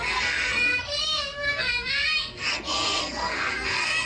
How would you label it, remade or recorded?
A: remade